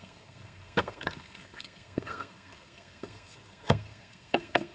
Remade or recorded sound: remade